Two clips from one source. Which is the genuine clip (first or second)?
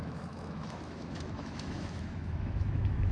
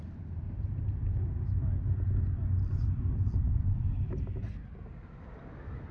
second